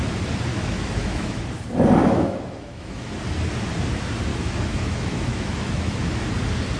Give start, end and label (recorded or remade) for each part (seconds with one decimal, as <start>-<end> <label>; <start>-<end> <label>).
0.0-0.5 recorded; 0.5-1.4 remade; 1.4-2.0 recorded; 2.0-3.1 remade; 3.1-4.3 recorded; 4.3-6.2 remade; 6.2-6.8 recorded